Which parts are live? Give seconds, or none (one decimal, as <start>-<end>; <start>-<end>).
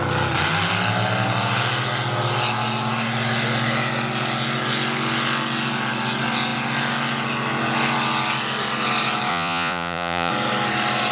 0.0-9.3; 10.3-11.1